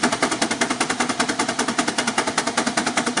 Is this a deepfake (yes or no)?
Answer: no